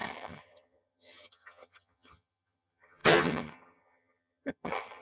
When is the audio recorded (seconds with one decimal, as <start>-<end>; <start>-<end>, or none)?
none